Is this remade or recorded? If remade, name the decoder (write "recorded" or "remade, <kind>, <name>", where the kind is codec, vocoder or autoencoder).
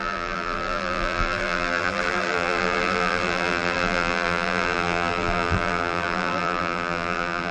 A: remade, vocoder, BigVGAN v2